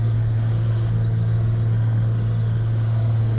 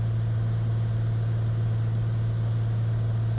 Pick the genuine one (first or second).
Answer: second